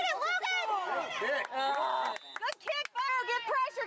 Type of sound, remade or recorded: recorded